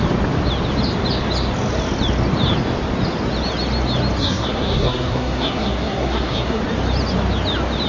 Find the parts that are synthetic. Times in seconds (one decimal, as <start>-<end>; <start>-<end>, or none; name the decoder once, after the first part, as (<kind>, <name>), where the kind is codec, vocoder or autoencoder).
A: 4.2-6.6 (codec, SNAC)